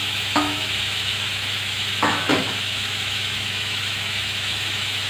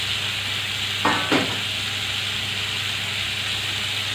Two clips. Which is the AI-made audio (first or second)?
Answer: first